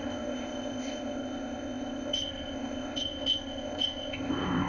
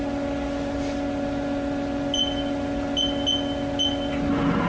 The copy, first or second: first